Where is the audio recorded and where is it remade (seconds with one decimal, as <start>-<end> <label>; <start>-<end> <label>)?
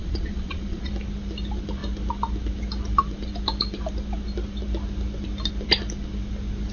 0.0-0.9 remade; 0.9-6.7 recorded